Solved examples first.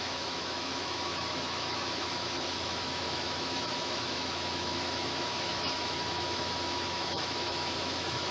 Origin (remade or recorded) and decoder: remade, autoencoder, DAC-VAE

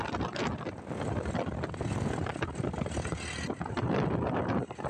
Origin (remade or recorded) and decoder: recorded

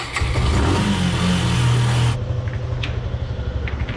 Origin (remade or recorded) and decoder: recorded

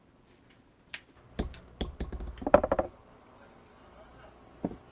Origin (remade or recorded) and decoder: recorded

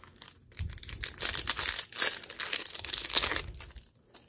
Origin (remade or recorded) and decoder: recorded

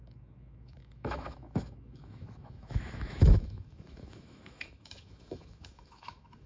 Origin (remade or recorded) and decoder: remade, autoencoder, DAC-VAE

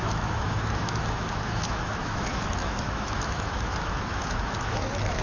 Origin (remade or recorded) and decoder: remade, autoencoder, DAC-VAE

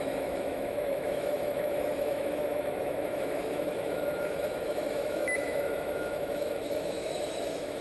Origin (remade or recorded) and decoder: remade, autoencoder, DAC-VAE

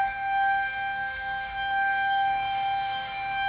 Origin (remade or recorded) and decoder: remade, autoencoder, DAC-VAE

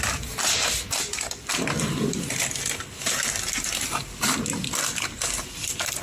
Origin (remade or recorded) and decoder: recorded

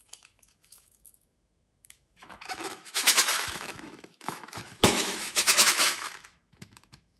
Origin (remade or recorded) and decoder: remade, autoencoder, DAC-VAE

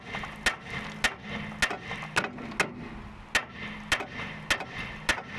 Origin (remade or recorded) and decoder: recorded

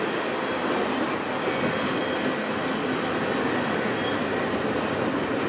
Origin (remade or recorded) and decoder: recorded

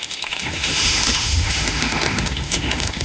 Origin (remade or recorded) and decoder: remade, autoencoder, DAC-VAE